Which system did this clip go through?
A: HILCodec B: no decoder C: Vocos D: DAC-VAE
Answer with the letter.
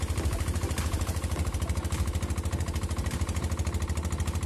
B